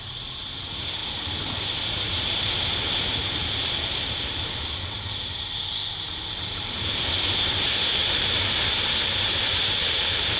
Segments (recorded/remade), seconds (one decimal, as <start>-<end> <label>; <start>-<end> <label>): 0.0-5.8 remade; 5.8-6.3 recorded; 6.3-10.4 remade